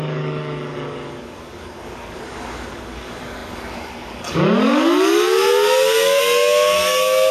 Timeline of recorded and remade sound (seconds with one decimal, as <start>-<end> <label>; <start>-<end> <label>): 0.0-7.3 remade